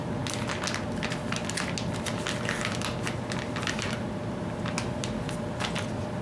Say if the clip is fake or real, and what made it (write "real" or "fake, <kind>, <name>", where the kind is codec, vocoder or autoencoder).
real